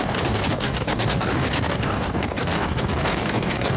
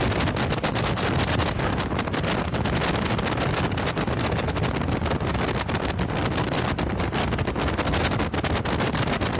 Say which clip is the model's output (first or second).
first